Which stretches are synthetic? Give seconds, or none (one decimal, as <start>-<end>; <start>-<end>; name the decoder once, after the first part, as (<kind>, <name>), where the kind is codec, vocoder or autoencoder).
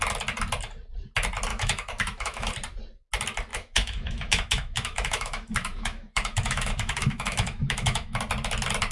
1.5-2.5 (autoencoder, DAC-VAE); 3.5-8.2